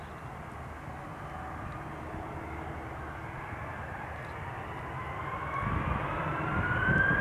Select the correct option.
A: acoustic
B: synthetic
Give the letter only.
A